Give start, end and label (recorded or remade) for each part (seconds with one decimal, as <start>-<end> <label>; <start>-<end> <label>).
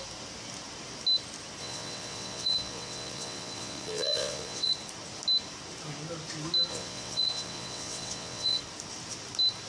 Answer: 0.0-1.6 recorded; 1.6-4.7 remade; 4.7-6.7 recorded; 6.7-8.6 remade; 8.6-9.7 recorded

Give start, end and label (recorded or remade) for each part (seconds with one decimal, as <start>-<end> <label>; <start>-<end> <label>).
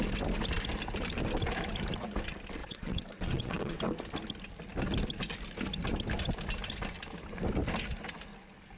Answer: 0.0-2.6 recorded; 2.6-3.8 remade; 3.8-8.8 recorded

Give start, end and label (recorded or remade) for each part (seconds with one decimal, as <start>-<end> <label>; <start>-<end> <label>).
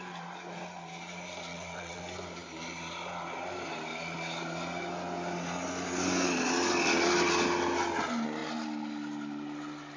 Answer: 0.0-1.5 recorded; 1.5-2.0 remade; 2.0-10.0 recorded